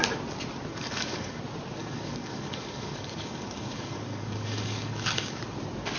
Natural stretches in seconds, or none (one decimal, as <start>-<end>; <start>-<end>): 0.0-0.7; 1.4-1.8; 5.4-6.0